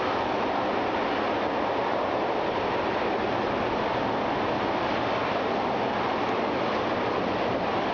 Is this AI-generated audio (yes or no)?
no